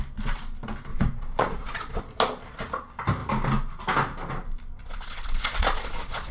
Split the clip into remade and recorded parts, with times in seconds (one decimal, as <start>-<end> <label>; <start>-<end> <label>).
0.0-0.9 recorded; 0.9-2.0 remade; 2.0-4.8 recorded; 4.8-6.3 remade